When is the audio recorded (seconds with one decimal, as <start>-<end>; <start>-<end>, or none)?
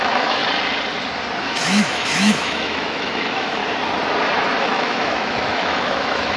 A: 0.4-1.4; 3.6-4.6